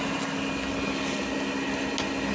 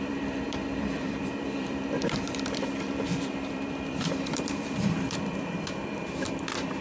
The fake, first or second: second